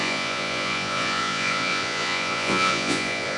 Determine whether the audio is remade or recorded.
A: remade